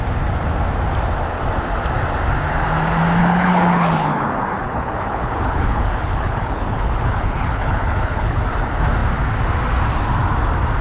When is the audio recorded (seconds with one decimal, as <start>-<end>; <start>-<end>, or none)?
0.0-3.2; 8.4-10.8